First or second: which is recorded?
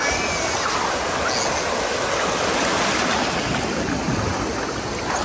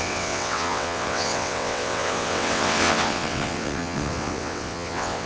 first